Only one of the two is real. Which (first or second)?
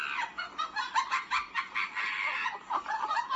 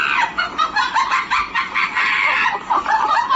first